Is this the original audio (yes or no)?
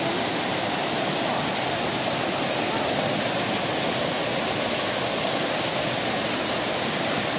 yes